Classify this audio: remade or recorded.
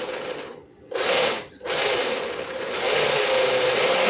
remade